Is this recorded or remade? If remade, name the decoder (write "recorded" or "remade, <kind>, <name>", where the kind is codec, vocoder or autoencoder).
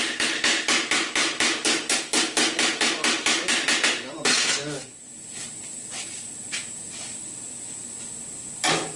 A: recorded